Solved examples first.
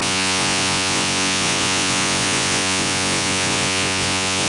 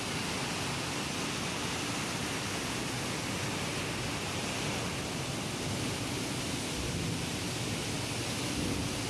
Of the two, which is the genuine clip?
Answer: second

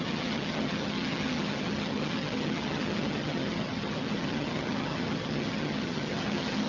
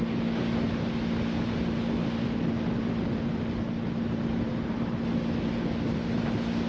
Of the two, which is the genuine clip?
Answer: second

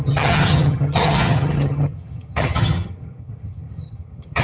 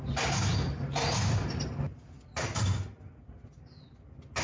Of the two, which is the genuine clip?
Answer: second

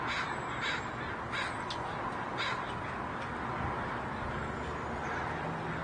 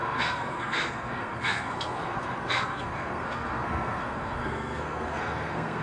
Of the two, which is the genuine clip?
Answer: first